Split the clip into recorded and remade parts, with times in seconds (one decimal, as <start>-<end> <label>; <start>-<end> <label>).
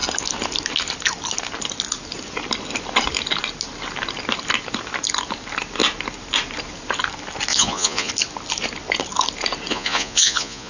0.0-7.5 recorded; 7.5-8.1 remade; 8.1-9.7 recorded; 9.7-10.7 remade